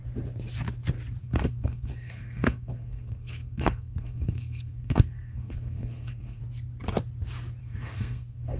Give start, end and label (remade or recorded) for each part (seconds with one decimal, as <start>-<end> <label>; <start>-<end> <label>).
0.0-1.2 recorded; 1.2-6.4 remade; 6.4-7.6 recorded; 7.6-8.6 remade